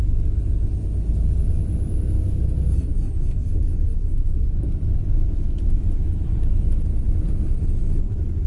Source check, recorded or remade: recorded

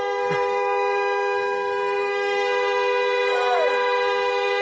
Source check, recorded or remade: remade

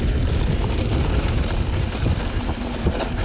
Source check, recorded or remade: recorded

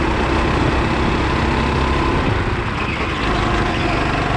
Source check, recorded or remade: recorded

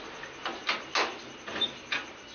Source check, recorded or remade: recorded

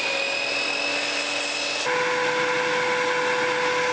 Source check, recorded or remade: recorded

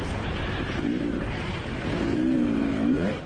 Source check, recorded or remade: remade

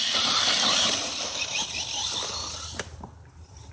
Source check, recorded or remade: recorded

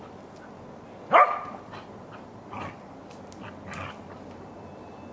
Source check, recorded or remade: recorded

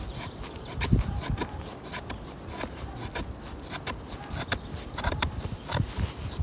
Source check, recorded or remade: recorded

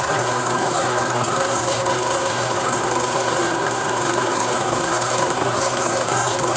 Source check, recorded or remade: remade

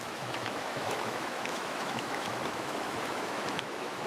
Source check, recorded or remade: remade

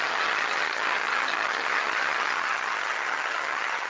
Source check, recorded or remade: remade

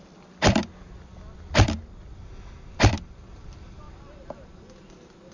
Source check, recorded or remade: recorded